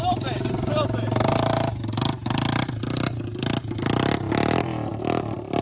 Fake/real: real